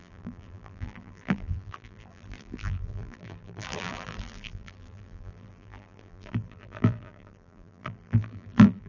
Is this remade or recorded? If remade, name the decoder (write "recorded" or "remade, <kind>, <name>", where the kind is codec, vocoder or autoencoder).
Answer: remade, vocoder, BigVGAN v2